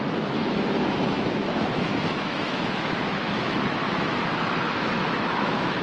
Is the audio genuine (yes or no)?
no